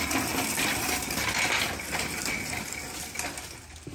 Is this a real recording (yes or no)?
yes